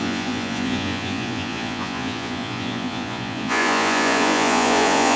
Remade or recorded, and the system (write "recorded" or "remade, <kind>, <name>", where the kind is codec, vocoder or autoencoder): remade, vocoder, Vocos